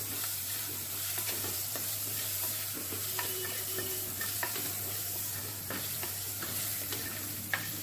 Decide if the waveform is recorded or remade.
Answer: remade